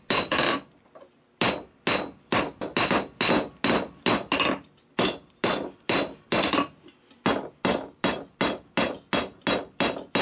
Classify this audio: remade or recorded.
recorded